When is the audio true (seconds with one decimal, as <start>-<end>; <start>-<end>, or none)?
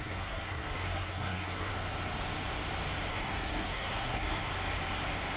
1.7-3.1; 4.5-5.4